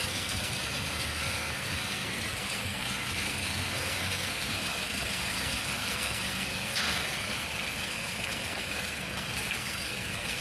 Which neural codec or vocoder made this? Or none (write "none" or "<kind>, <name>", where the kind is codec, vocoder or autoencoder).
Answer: codec, SNAC